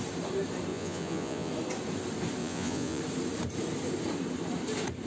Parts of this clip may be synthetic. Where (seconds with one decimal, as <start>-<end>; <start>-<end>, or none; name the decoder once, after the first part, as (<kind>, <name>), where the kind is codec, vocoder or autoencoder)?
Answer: 0.7-1.5 (vocoder, Vocos); 2.4-3.0